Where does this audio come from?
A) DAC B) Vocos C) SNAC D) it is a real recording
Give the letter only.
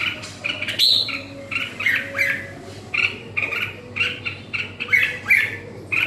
D